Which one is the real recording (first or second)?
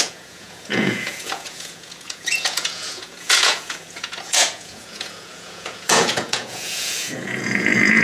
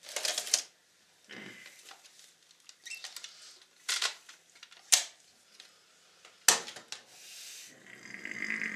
second